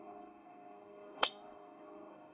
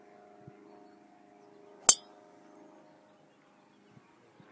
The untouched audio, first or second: second